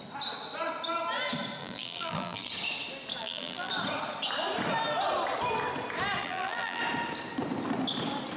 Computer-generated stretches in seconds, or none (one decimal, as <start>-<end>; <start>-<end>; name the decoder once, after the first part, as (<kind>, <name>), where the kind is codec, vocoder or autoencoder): 1.6-2.5 (vocoder, BigVGAN v2); 3.2-3.7; 6.2-6.8